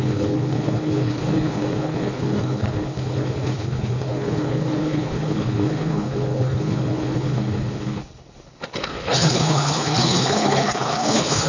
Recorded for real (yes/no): no